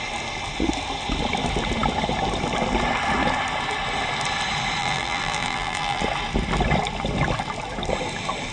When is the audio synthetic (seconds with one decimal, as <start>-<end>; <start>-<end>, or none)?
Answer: 4.8-6.0

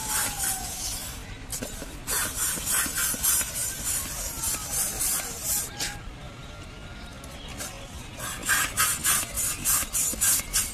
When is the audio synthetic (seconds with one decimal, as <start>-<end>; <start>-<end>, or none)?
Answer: 2.0-2.6

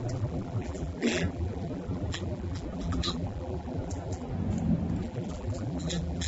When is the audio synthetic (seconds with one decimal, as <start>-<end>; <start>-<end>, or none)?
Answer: 0.0-4.3; 5.0-6.3

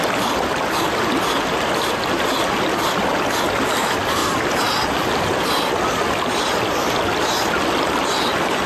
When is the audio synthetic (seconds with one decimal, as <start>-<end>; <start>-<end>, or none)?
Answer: none

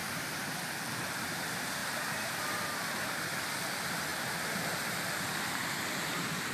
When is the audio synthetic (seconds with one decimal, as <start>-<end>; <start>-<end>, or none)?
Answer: 0.0-0.5; 1.8-3.2

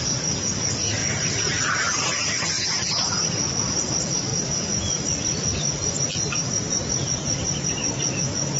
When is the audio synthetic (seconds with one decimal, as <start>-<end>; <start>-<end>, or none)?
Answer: none

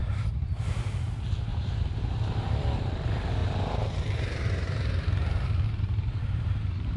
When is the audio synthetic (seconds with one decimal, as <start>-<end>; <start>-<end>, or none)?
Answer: 0.0-1.0; 1.5-2.0; 3.4-7.0